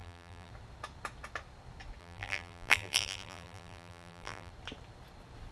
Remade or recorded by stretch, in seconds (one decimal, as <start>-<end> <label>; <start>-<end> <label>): 0.0-0.5 remade; 0.5-2.0 recorded; 2.0-4.5 remade; 4.5-5.5 recorded